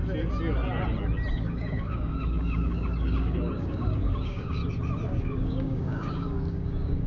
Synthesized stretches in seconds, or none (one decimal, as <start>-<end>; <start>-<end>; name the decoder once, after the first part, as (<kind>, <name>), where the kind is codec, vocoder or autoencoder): 1.3-4.6 (codec, DAC); 5.2-7.1